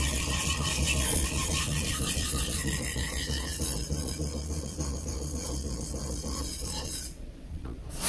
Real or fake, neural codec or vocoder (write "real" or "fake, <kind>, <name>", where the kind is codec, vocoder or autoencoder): fake, vocoder, Vocos